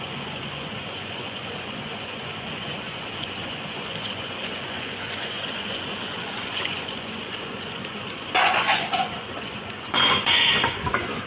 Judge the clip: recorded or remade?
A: remade